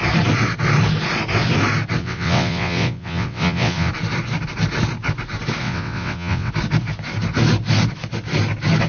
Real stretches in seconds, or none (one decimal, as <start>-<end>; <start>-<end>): 0.0-2.0; 3.9-5.6; 6.5-8.9

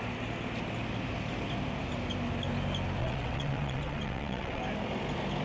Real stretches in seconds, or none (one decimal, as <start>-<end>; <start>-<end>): 0.0-3.0; 4.6-5.4